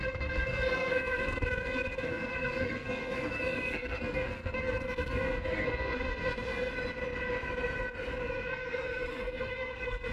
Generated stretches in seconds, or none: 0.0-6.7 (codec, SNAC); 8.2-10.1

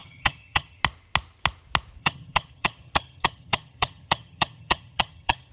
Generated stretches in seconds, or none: 0.0-0.8 (vocoder, HiFi-GAN); 2.0-5.5

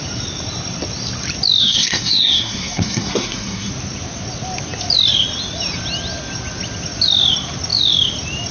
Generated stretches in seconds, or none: 1.6-3.7 (codec, SNAC)

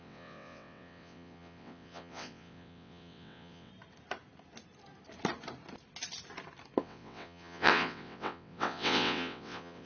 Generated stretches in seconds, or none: 0.0-3.7 (vocoder, WaveNeXt); 6.8-9.9

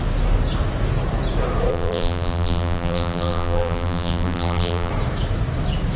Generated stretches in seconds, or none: 1.7-4.9 (vocoder, BigVGAN v2)

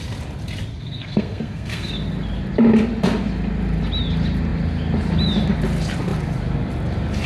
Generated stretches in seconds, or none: 0.7-1.9 (codec, SNAC)